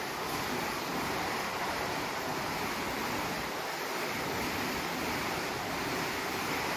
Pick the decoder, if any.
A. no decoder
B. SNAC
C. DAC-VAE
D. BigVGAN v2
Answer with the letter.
D